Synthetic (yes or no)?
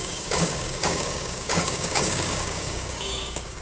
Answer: yes